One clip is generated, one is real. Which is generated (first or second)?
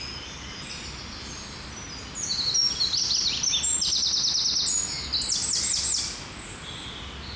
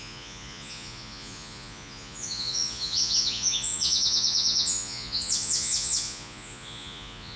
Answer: second